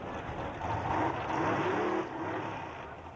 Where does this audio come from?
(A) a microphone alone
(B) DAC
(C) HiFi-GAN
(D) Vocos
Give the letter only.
A